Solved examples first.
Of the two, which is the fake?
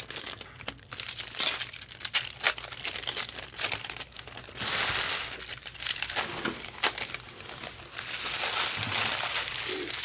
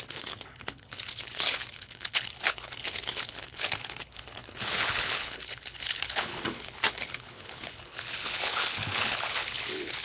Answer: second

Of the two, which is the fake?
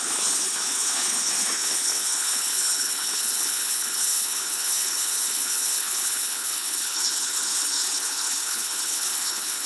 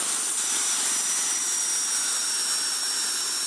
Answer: first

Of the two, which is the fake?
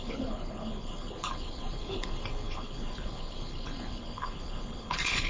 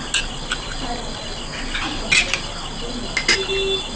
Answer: first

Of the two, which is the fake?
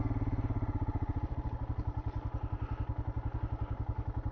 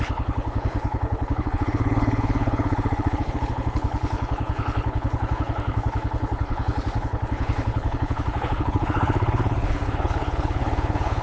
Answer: second